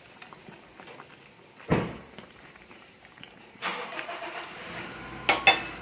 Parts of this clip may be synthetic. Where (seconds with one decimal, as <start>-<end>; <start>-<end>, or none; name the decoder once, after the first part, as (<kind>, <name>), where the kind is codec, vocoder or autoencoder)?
1.7-4.4 (vocoder, BigVGAN v2)